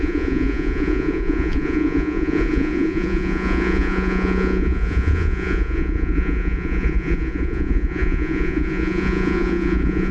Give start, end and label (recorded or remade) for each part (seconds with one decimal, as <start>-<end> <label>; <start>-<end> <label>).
0.0-10.1 remade